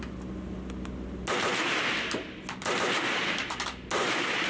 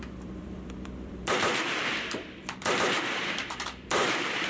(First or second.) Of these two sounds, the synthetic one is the second